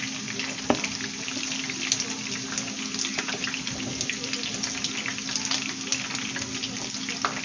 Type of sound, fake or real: real